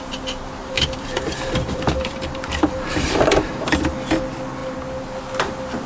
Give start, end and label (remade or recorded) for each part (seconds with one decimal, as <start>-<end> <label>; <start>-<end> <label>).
0.0-0.6 recorded; 0.6-3.6 remade; 3.6-5.9 recorded